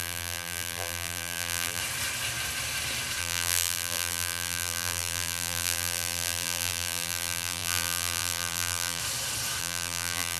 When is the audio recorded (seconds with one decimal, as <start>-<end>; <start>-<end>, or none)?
1.8-3.2; 9.0-9.6